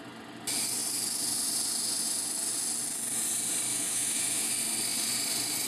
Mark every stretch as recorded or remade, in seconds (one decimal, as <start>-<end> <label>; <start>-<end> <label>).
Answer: 0.0-3.7 recorded; 3.7-4.5 remade; 4.5-5.7 recorded